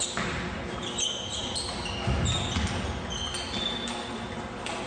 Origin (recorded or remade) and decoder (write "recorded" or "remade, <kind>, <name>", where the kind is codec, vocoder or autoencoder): recorded